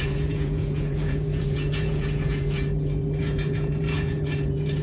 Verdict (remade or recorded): remade